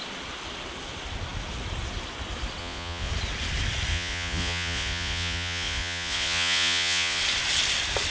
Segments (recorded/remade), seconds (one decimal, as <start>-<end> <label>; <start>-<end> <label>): 0.0-2.6 recorded; 2.6-3.1 remade; 3.1-3.9 recorded; 3.9-7.2 remade; 7.2-8.1 recorded